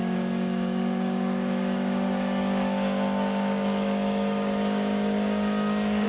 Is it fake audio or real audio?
fake